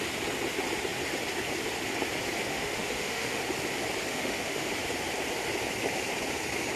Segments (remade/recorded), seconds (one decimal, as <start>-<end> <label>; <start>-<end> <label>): 0.0-2.5 recorded; 2.5-3.4 remade; 3.4-4.1 recorded; 4.1-4.7 remade; 4.7-6.8 recorded